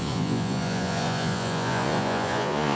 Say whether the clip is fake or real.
fake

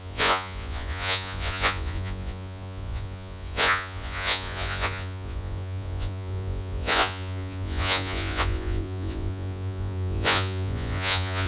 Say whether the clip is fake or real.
fake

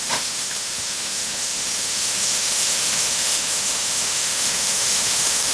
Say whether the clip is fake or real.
fake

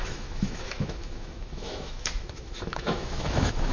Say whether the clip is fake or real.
fake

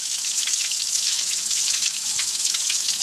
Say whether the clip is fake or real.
fake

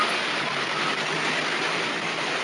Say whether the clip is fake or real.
real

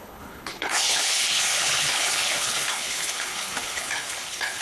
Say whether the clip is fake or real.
fake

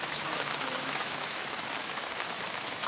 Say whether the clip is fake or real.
fake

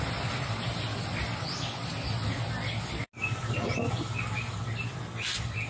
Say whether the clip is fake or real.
real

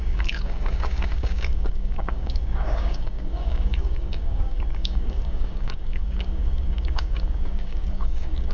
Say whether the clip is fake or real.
fake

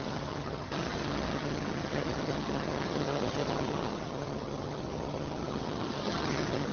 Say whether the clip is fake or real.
fake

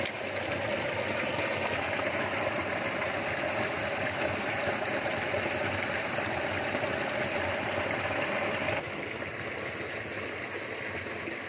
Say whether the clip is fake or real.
real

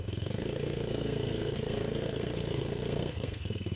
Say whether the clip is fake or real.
fake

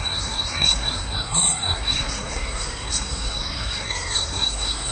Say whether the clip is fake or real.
fake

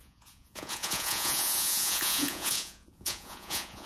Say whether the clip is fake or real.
fake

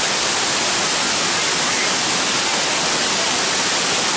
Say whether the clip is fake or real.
real